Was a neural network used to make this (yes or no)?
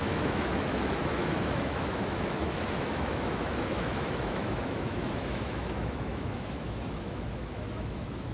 yes